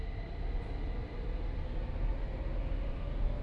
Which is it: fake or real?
real